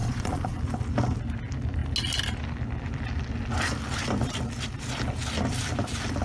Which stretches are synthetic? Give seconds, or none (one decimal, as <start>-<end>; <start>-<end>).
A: 0.0-0.6

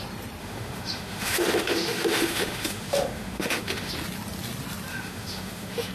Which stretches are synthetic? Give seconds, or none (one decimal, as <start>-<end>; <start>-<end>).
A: 0.4-3.9; 4.9-5.9

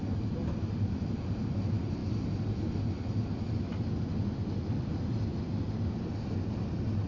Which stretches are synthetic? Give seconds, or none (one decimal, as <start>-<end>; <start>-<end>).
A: none

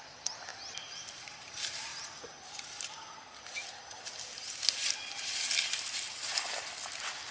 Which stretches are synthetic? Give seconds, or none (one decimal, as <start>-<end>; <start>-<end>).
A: none

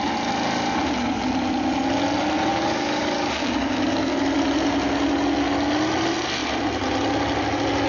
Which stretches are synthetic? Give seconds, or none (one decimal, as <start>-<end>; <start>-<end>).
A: 2.5-4.2

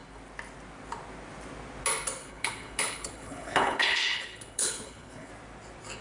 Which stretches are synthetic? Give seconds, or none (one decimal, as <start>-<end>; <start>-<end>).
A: 2.2-5.3

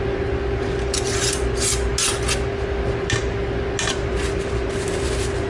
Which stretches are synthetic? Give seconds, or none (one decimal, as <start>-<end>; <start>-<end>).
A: none